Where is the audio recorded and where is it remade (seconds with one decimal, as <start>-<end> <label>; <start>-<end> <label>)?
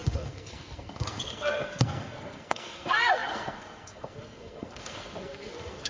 0.0-5.9 remade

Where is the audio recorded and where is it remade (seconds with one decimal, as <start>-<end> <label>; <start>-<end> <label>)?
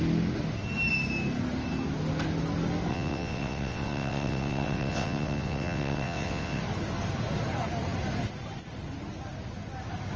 0.0-2.9 recorded; 2.9-6.6 remade; 6.6-10.2 recorded